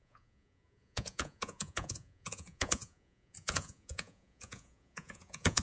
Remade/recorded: remade